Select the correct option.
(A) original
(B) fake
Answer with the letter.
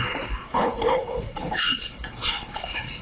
B